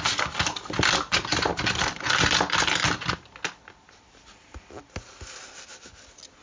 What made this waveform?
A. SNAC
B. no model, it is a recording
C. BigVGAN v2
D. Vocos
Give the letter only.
B